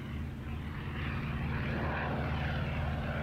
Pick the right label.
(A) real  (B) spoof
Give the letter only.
A